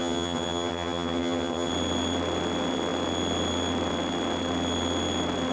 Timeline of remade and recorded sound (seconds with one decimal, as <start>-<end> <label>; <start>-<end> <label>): 0.0-1.7 remade; 1.7-5.5 recorded